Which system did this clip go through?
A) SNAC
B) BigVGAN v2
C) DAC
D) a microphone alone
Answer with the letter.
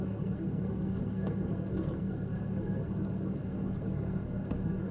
A